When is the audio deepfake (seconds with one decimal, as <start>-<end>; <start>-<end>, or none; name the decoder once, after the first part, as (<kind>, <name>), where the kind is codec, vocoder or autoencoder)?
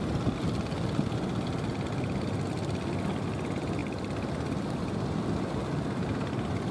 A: none